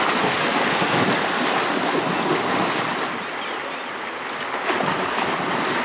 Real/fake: real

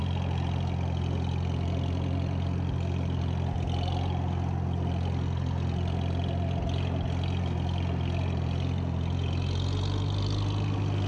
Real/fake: real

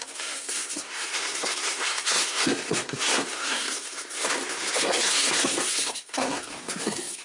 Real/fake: fake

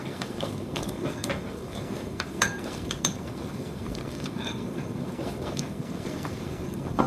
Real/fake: fake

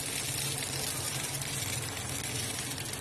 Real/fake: real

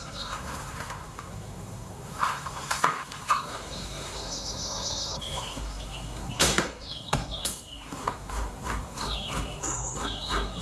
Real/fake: fake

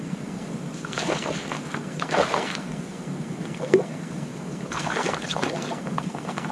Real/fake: fake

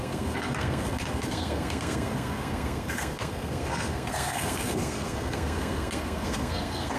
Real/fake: fake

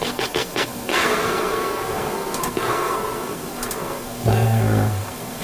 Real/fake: fake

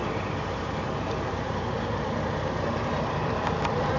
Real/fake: real